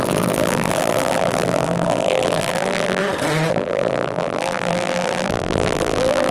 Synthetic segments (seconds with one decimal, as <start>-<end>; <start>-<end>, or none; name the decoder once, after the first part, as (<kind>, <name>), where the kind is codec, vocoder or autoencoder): 0.0-3.0 (vocoder, BigVGAN v2); 3.5-6.3